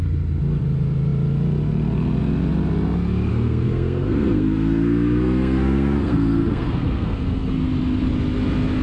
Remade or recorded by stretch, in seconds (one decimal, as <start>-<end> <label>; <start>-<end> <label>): 0.0-3.3 recorded; 3.3-7.5 remade; 7.5-8.8 recorded